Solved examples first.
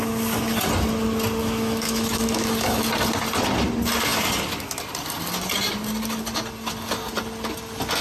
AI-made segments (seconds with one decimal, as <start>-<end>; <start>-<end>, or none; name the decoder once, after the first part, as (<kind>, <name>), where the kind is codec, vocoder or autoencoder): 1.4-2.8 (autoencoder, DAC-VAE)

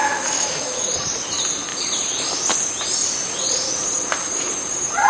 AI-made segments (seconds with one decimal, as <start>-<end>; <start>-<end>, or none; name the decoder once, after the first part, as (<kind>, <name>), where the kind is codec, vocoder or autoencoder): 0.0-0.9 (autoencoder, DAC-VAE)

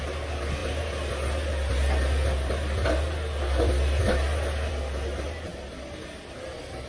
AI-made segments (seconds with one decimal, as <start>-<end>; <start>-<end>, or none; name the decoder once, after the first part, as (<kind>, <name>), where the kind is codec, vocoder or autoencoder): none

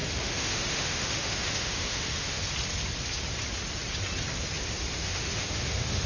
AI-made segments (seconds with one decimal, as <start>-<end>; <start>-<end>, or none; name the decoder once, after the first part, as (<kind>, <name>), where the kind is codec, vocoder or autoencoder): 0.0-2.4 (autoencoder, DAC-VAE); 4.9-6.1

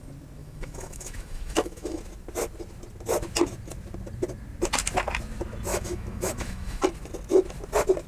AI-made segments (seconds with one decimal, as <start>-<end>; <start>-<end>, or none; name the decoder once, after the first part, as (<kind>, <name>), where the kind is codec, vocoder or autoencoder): 0.4-2.0 (autoencoder, DAC-VAE); 5.7-6.8

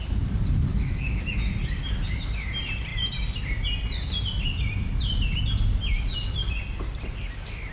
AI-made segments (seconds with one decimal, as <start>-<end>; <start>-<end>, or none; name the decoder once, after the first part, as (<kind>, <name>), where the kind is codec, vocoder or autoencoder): 0.7-1.5 (autoencoder, DAC-VAE)

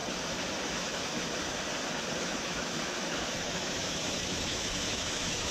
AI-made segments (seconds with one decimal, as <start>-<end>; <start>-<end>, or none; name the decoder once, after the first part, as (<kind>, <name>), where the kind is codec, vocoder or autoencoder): 0.7-1.1 (autoencoder, DAC-VAE); 2.2-5.5

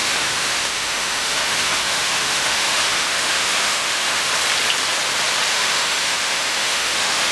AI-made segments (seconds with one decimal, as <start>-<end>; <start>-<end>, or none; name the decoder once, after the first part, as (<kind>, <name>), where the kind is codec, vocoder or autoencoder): 0.0-4.3 (autoencoder, DAC-VAE); 5.5-7.3